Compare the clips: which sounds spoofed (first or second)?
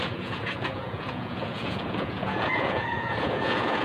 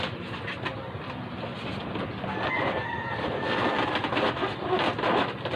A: first